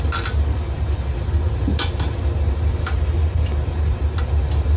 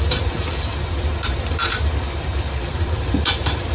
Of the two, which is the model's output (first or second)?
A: second